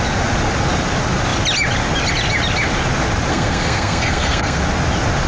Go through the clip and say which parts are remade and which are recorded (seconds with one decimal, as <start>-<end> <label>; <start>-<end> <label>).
0.0-3.3 recorded; 3.3-4.6 remade; 4.6-5.3 recorded